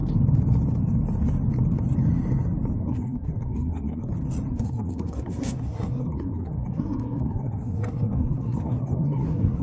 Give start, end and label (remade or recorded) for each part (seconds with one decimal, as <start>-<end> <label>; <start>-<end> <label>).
0.0-2.8 recorded; 2.8-4.1 remade; 4.1-4.5 recorded; 4.5-9.6 remade